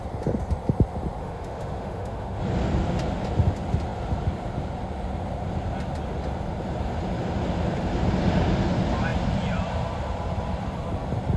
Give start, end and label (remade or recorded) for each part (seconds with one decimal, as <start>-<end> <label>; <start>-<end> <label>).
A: 0.0-1.2 recorded; 1.2-2.4 remade; 2.4-11.4 recorded